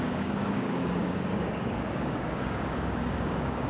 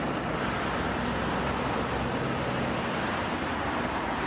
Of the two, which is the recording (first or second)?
second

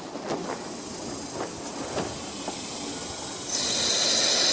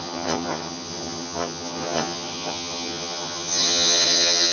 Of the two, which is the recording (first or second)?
first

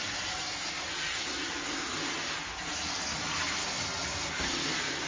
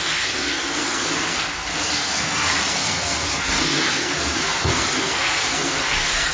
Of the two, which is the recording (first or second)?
first